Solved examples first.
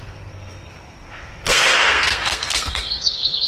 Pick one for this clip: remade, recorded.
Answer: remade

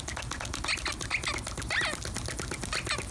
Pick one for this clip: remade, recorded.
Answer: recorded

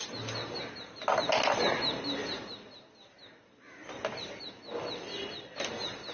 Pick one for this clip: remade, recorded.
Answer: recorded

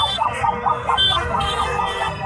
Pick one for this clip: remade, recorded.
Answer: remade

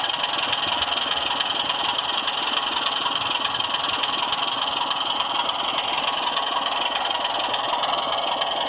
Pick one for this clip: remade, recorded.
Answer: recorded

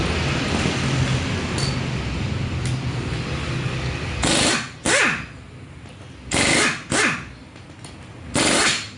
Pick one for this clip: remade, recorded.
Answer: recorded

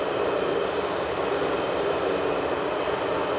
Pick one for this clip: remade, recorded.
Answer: recorded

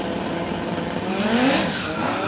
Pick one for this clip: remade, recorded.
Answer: recorded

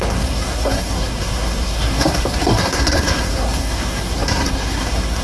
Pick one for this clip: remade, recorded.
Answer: remade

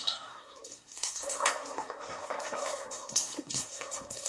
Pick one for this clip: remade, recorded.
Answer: remade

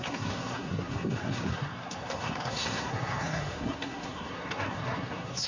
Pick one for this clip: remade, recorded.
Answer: remade